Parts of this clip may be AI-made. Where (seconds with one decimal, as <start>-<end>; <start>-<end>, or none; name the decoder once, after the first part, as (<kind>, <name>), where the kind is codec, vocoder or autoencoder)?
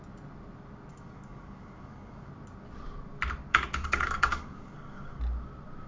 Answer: 0.9-2.3 (codec, DAC); 3.5-5.2